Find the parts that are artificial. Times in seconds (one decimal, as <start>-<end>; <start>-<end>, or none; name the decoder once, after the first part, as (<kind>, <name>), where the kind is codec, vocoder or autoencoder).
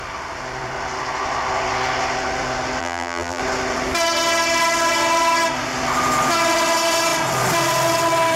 2.8-3.4 (vocoder, BigVGAN v2)